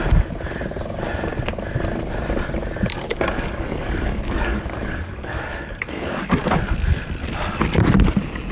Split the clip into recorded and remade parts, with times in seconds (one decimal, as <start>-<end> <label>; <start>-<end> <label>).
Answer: 0.0-3.1 recorded; 3.1-6.4 remade; 6.4-8.5 recorded